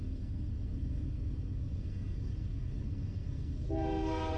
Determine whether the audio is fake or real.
fake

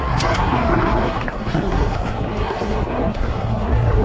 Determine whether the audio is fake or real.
fake